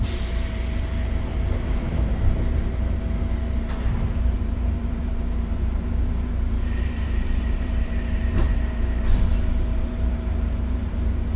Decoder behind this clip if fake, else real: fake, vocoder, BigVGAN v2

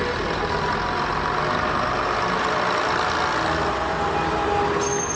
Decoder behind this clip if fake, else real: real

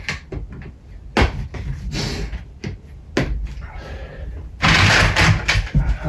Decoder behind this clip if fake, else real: real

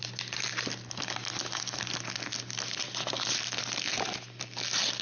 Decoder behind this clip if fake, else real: real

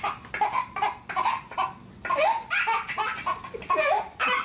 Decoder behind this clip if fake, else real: real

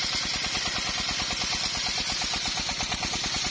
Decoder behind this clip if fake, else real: real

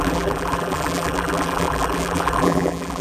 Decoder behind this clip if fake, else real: fake, vocoder, BigVGAN v2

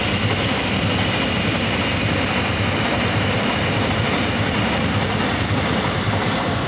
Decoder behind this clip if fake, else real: real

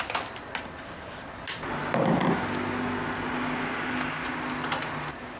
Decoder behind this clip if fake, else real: real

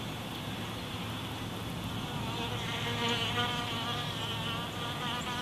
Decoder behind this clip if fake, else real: real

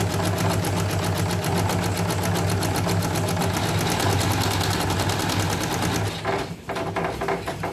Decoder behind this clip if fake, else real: real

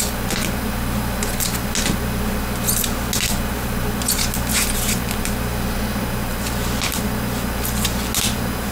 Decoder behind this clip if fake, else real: real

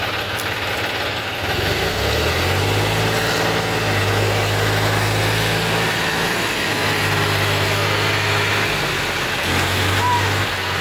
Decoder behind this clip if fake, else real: real